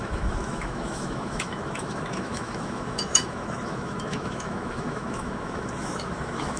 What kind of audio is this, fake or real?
fake